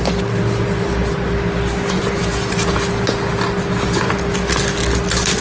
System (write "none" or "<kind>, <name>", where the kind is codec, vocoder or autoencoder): none